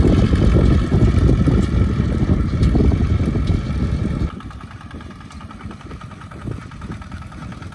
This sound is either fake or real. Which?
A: real